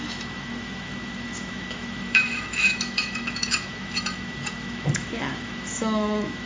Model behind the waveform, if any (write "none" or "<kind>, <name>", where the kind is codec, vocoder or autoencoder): autoencoder, DAC-VAE